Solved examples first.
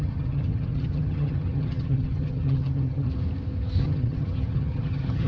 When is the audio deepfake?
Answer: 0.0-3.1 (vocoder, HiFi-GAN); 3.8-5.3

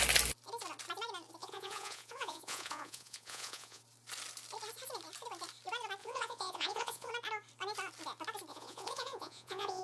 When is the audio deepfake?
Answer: 1.4-3.8 (vocoder, Vocos); 6.0-7.1; 8.5-9.8

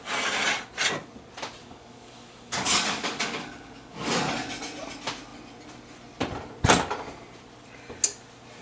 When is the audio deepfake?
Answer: 1.6-4.1 (codec, DAC)

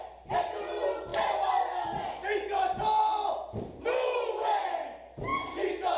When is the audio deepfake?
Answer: none

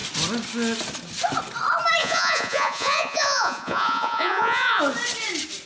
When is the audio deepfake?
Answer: 2.0-4.8 (vocoder, Vocos)